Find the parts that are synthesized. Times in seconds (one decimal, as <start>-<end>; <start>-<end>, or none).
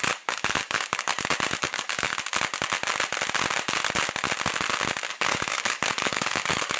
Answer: 0.0-1.1; 1.6-2.1; 5.1-6.8